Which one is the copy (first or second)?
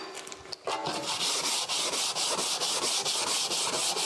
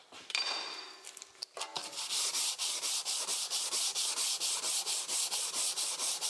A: second